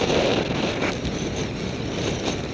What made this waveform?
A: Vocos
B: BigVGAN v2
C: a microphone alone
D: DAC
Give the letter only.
C